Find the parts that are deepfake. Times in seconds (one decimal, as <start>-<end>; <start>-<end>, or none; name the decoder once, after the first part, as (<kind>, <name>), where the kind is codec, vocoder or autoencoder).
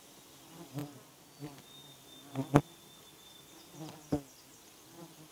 none